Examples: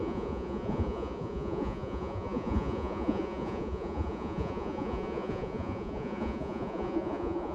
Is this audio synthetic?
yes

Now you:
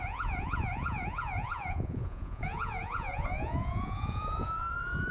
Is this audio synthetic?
yes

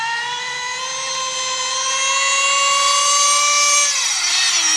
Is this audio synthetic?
no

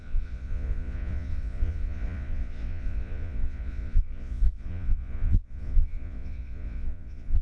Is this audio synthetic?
yes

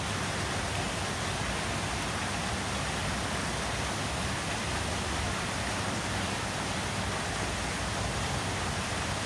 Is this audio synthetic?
no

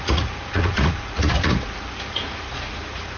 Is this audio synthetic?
yes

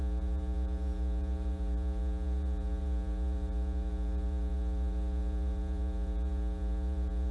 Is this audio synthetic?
yes